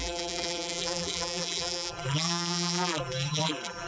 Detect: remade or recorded remade